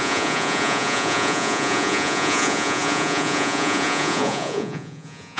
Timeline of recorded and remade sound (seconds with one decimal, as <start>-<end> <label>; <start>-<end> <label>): 0.0-5.4 remade